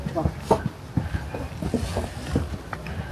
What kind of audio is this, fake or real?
real